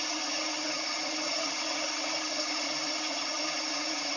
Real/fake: fake